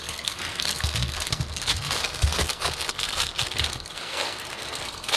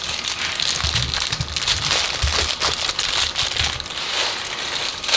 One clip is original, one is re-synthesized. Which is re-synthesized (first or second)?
first